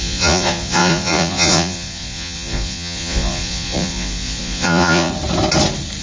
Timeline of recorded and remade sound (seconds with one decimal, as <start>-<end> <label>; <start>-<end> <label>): 0.0-5.1 remade; 5.1-6.0 recorded